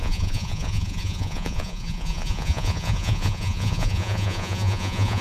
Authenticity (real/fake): fake